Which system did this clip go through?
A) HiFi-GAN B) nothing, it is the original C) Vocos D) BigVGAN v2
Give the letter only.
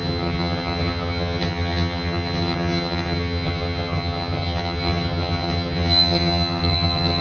A